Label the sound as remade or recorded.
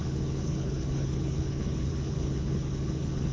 remade